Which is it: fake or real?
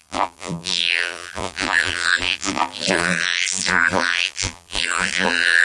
fake